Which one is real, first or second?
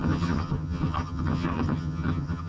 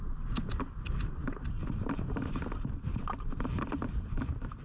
second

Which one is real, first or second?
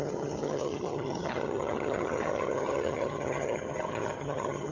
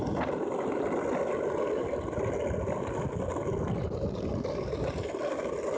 second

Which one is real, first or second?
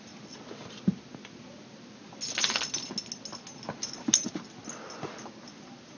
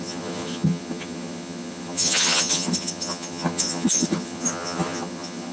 first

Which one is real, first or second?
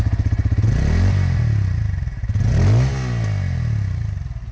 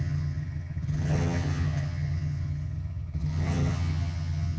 first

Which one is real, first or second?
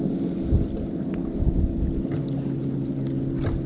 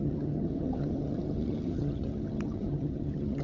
first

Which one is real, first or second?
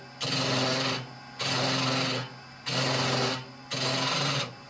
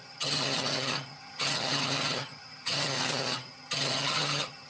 first